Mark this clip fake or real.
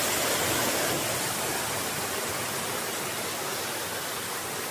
real